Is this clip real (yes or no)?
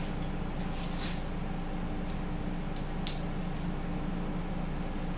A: yes